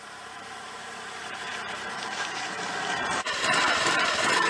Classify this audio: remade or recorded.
remade